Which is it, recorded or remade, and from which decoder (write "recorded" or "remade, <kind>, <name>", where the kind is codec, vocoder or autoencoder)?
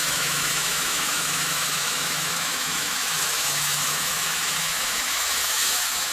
remade, autoencoder, DAC-VAE